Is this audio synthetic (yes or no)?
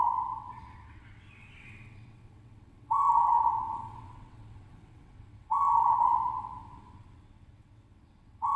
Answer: yes